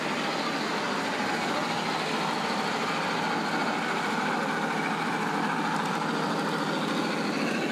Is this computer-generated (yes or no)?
no